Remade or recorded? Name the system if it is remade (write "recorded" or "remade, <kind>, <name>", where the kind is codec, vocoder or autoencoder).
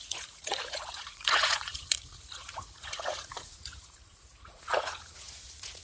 remade, vocoder, Vocos